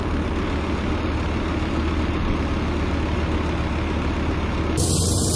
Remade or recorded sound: recorded